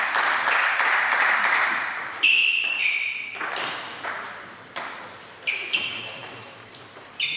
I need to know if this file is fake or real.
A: real